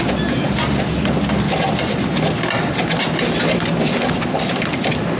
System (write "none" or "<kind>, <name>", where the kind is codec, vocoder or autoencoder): none